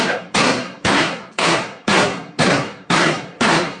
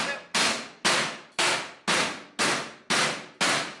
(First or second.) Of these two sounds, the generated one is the first